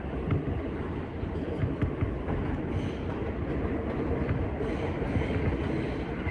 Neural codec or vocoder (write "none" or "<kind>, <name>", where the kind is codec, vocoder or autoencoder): none